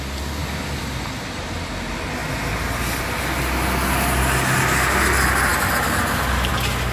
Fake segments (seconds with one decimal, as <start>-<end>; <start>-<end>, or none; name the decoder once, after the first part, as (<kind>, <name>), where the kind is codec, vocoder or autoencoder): 0.4-0.9 (vocoder, BigVGAN v2); 5.5-6.5